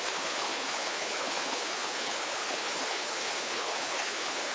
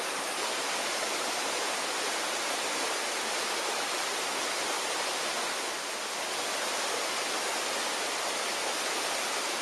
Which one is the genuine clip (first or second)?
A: second